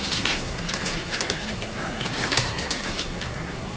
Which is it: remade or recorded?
remade